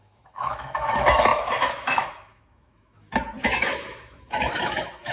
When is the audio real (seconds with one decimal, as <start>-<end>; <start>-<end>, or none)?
none